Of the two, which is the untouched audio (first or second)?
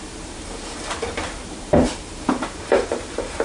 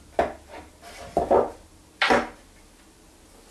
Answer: second